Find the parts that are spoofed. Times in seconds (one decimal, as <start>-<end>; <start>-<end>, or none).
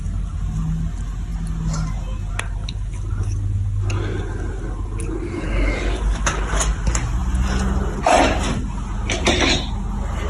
none